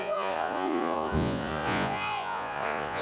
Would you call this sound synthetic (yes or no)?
yes